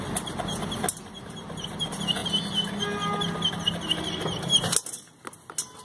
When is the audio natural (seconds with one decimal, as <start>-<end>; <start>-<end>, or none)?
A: 0.0-5.8